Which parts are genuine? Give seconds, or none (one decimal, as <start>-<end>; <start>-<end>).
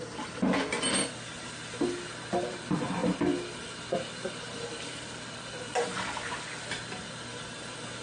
0.0-3.0; 5.5-8.0